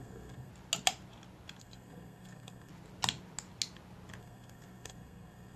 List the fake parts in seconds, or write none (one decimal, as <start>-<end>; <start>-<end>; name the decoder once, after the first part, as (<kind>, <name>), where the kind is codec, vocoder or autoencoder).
0.0-0.5 (codec, SNAC); 1.6-2.7; 4.2-5.6

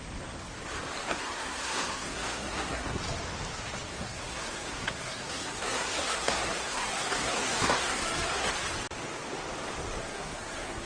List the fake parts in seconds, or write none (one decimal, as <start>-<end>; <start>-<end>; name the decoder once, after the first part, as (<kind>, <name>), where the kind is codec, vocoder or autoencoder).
1.1-3.0 (codec, SNAC); 3.9-8.5; 10.0-10.9

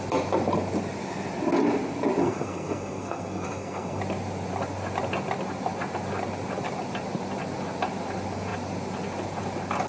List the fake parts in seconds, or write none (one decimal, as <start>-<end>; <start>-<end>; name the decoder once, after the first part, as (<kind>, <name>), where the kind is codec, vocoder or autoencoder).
2.2-4.0 (codec, SNAC)

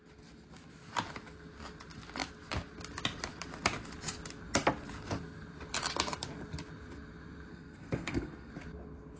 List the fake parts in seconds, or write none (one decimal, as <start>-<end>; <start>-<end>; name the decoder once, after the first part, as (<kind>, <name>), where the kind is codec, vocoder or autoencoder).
7.5-8.5 (codec, SNAC)

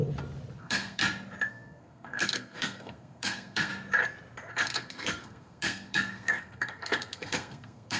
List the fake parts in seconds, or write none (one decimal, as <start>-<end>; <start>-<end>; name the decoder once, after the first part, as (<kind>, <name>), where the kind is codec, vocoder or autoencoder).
0.6-1.0 (codec, SNAC); 1.5-3.7; 4.5-8.0

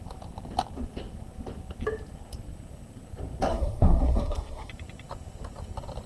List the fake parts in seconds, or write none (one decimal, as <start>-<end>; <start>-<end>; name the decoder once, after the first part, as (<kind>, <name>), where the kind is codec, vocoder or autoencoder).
3.5-4.7 (codec, SNAC)

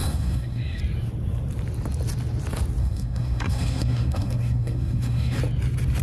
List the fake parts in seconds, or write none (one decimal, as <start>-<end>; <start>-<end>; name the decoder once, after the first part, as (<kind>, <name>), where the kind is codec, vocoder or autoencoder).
0.0-0.8 (codec, SNAC); 2.8-5.4